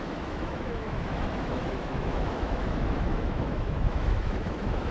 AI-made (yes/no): yes